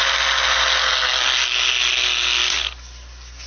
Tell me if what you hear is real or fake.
real